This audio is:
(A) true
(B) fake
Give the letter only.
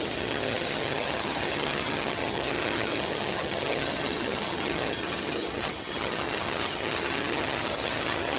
B